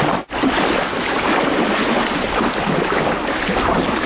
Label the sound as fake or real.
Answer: real